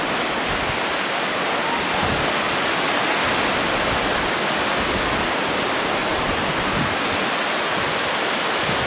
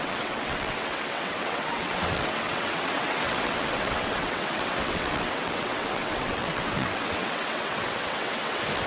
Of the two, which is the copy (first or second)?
second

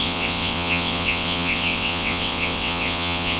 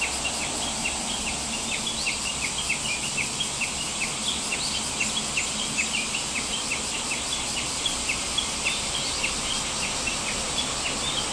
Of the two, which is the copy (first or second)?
first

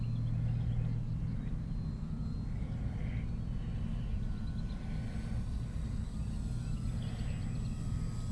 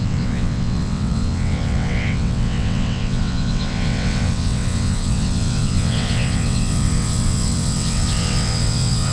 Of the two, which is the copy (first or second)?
second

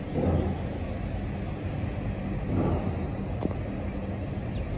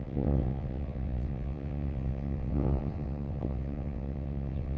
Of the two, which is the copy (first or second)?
second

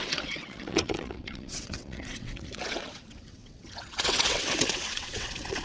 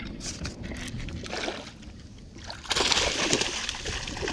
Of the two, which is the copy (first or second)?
first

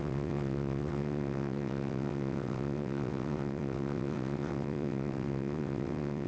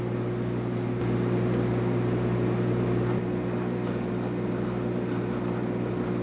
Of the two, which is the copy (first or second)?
first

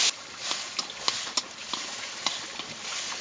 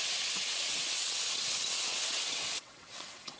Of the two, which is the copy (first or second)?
second